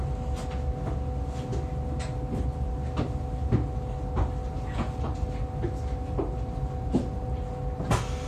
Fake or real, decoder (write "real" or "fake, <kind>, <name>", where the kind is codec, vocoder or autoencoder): real